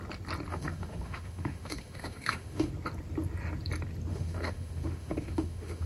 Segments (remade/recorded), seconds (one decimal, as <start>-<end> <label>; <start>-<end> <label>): 0.0-0.5 recorded; 0.5-2.7 remade; 2.7-4.1 recorded; 4.1-5.9 remade

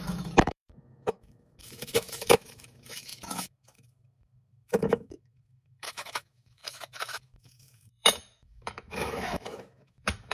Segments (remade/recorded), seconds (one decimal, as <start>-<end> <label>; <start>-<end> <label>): 0.0-10.3 remade

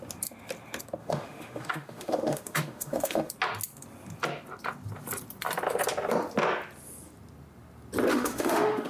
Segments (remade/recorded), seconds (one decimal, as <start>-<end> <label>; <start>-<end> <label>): 0.0-1.0 recorded; 1.0-3.3 remade; 3.3-8.1 recorded; 8.1-8.9 remade

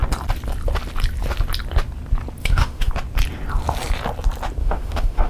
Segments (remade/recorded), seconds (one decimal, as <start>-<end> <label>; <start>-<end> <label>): 0.0-2.4 recorded; 2.4-2.9 remade; 2.9-4.6 recorded; 4.6-5.3 remade

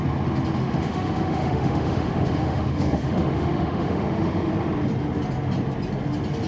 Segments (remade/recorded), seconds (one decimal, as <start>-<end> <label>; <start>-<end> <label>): 0.0-0.6 recorded; 0.6-4.5 remade; 4.5-6.5 recorded

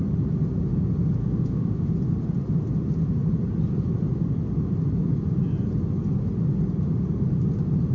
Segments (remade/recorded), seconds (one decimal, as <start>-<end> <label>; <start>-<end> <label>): 0.0-1.2 recorded; 1.2-1.9 remade; 1.9-7.9 recorded

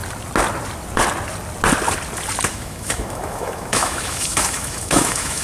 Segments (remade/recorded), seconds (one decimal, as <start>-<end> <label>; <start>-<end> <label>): 0.0-2.5 recorded; 2.5-5.4 remade